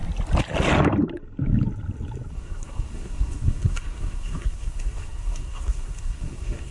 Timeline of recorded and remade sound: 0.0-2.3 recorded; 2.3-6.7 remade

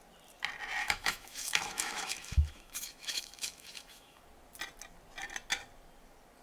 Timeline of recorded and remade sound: 0.0-0.8 recorded; 0.8-4.2 remade; 4.2-6.4 recorded

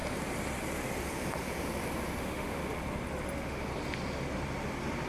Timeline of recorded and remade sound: 0.0-2.2 recorded; 2.2-2.6 remade; 2.6-3.3 recorded; 3.3-3.7 remade; 3.7-5.1 recorded

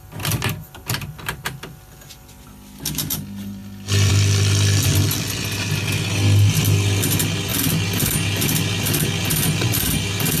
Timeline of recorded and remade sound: 0.0-10.4 recorded

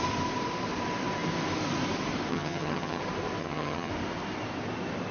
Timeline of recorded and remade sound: 0.0-2.3 recorded; 2.3-3.0 remade; 3.0-3.4 recorded; 3.4-3.9 remade; 3.9-5.1 recorded

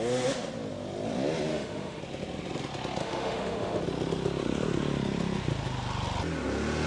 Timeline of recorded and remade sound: 0.0-1.5 recorded; 1.5-2.0 remade; 2.0-3.0 recorded; 3.0-3.8 remade; 3.8-6.9 recorded

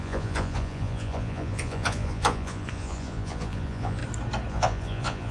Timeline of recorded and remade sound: 0.0-4.0 remade; 4.0-4.5 recorded; 4.5-5.3 remade

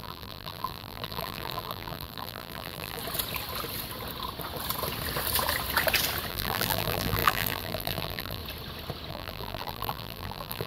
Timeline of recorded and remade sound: 0.0-3.0 remade; 3.0-6.3 recorded; 6.3-8.4 remade; 8.4-9.1 recorded; 9.1-10.7 remade